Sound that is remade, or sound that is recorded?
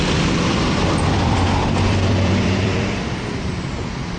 remade